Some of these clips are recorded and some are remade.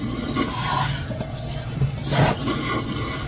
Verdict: recorded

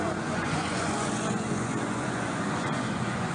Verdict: remade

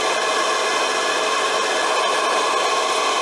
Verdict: recorded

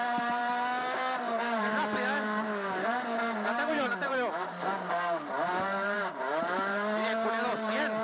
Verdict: remade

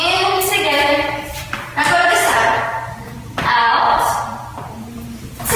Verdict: remade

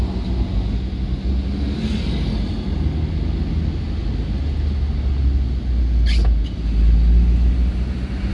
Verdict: recorded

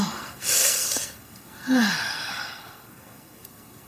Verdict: remade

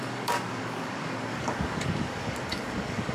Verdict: remade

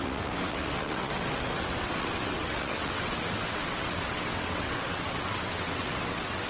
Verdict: remade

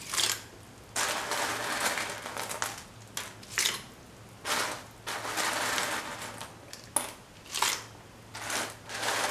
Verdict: recorded